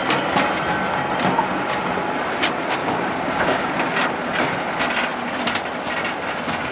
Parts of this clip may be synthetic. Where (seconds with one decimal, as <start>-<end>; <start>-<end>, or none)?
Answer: 2.8-3.7